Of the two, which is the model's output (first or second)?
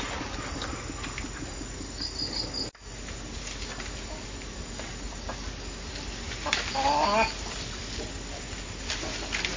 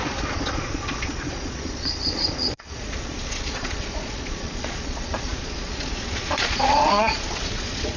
second